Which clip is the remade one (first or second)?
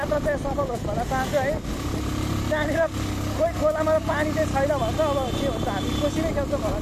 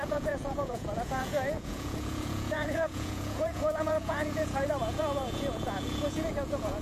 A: second